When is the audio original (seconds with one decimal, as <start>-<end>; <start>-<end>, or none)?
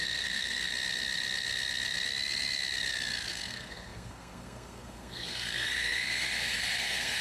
0.7-3.3